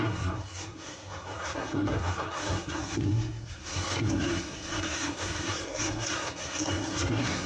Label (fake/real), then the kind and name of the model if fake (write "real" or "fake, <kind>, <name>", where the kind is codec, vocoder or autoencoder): fake, codec, SNAC